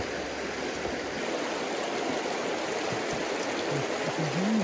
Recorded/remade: recorded